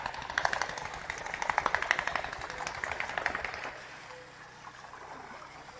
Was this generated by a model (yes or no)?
no